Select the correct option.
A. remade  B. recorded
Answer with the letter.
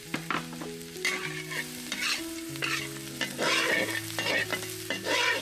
B